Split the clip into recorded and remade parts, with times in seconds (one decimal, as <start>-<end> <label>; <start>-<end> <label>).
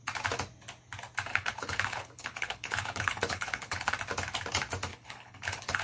0.0-1.3 recorded; 1.3-3.9 remade; 3.9-4.9 recorded; 4.9-5.8 remade